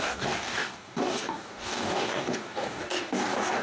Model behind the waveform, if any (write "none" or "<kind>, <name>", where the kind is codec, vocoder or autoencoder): codec, DAC